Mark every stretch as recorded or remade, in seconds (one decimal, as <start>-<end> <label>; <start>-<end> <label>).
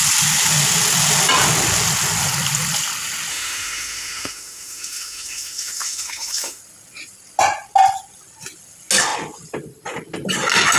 0.0-3.3 recorded; 3.3-6.6 remade; 6.6-10.8 recorded